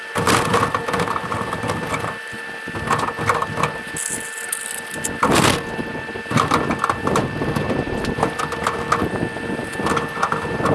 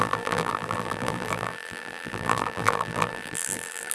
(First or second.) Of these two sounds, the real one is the first